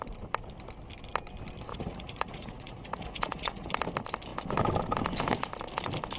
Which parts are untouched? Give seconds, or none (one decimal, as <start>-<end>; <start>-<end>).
0.0-1.7; 3.7-6.2